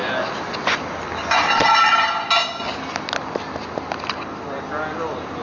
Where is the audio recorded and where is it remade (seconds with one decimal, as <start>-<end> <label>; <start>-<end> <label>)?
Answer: 0.0-5.4 recorded